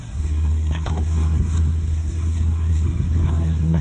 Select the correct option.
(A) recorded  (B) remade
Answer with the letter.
B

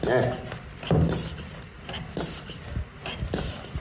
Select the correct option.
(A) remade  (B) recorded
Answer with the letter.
B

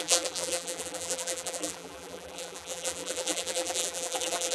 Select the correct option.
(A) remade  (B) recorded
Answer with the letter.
A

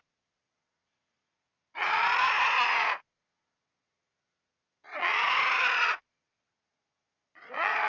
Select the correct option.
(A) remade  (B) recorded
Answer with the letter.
A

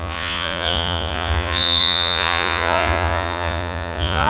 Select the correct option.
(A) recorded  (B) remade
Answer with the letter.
B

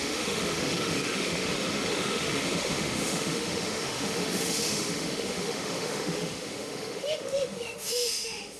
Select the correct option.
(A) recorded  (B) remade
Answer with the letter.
B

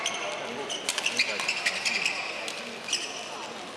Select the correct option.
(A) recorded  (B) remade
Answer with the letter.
A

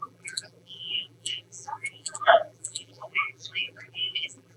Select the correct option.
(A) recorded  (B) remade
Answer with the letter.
B